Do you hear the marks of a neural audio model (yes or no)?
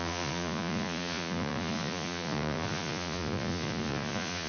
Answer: yes